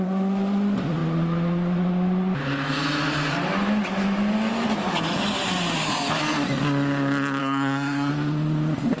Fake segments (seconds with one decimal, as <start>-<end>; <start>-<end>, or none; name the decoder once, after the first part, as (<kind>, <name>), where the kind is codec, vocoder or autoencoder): 7.4-8.1 (codec, SNAC)